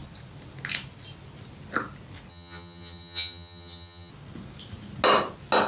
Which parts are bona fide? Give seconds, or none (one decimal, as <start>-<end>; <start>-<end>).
0.0-2.3; 4.1-5.7